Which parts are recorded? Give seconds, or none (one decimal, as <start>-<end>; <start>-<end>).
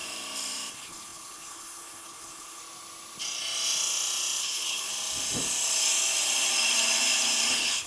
0.0-0.7; 2.6-4.4; 4.9-7.5